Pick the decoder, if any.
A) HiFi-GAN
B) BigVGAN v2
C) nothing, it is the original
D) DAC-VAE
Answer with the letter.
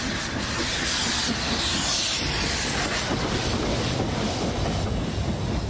B